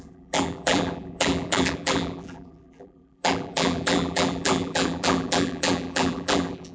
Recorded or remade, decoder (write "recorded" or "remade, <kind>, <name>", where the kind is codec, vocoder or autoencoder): remade, vocoder, BigVGAN v2